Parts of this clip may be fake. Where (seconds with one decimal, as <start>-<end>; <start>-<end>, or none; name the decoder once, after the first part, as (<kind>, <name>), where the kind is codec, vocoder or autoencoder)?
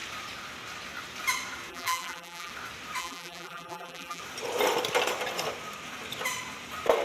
1.7-2.5 (vocoder, BigVGAN v2); 3.0-4.2